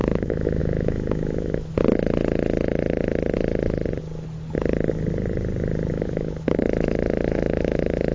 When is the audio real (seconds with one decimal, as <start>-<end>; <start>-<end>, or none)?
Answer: 1.7-5.9